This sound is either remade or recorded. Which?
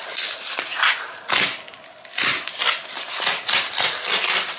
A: recorded